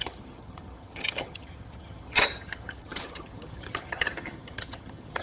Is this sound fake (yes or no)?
yes